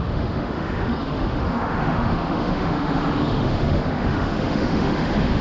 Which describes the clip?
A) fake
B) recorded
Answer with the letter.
A